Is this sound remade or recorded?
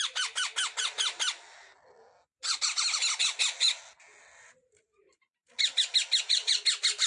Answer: recorded